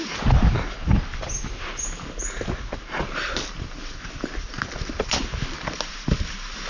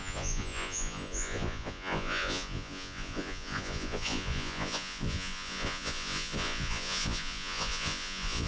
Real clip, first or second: first